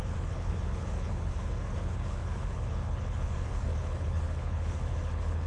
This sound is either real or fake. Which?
fake